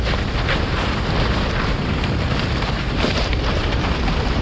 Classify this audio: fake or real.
fake